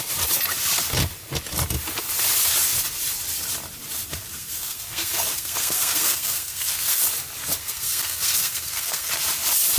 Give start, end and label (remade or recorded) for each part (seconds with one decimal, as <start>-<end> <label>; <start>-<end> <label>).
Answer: 0.0-4.2 recorded; 4.2-7.0 remade; 7.0-7.6 recorded; 7.6-9.1 remade; 9.1-9.8 recorded